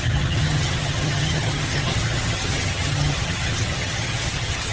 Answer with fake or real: fake